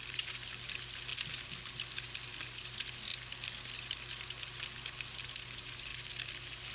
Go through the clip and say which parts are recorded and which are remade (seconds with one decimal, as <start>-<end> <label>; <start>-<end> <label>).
0.0-1.1 remade; 1.1-2.3 recorded; 2.3-5.9 remade; 5.9-6.7 recorded